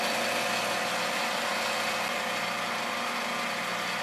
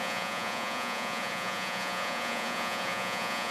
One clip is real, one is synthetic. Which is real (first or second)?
first